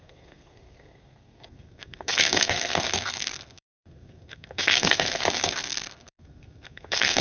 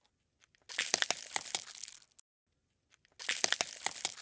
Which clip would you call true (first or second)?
second